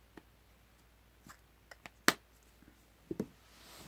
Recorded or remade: recorded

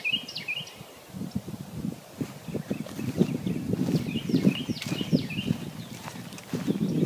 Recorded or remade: recorded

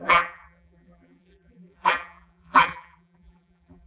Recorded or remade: remade